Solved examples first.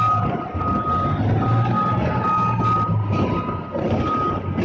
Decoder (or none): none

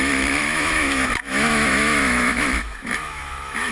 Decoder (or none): autoencoder, DAC-VAE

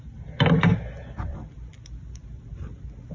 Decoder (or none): none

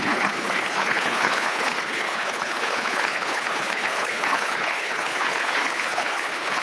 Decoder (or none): codec, HILCodec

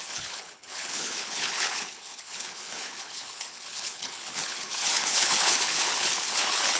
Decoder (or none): codec, HILCodec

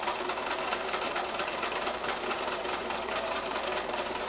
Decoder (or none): vocoder, BigVGAN v2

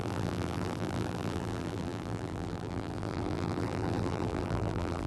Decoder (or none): vocoder, BigVGAN v2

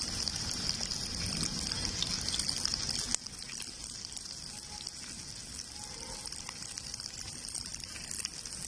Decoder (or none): none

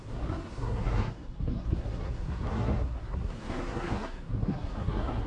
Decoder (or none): codec, SNAC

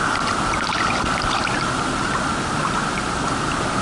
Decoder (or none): none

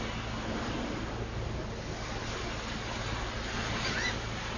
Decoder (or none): none